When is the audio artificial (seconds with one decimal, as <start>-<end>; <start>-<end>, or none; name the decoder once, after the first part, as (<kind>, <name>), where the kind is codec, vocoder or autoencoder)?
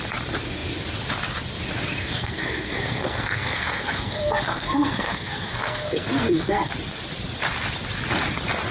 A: 2.0-6.7 (codec, SNAC)